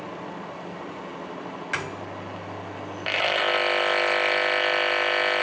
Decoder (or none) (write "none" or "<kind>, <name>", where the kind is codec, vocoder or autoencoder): none